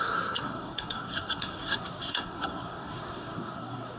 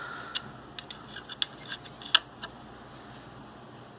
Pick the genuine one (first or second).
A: second